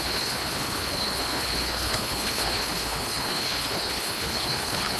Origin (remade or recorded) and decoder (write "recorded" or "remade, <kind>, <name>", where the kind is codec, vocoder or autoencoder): remade, codec, HILCodec